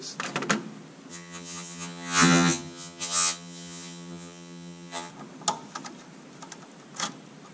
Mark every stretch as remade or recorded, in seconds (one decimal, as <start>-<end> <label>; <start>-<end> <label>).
0.0-1.1 recorded; 1.1-5.1 remade; 5.1-7.5 recorded